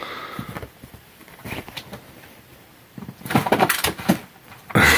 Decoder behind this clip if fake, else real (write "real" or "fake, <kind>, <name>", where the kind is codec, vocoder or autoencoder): fake, vocoder, BigVGAN v2